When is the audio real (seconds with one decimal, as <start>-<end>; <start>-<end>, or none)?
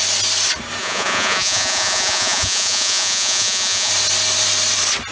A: 0.0-0.8; 3.9-5.1